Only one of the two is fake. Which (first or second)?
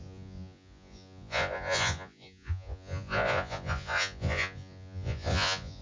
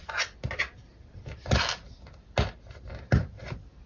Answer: first